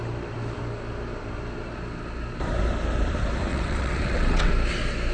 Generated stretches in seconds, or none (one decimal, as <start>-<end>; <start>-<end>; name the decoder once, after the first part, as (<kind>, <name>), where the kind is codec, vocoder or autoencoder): 3.5-4.5 (vocoder, WaveNeXt)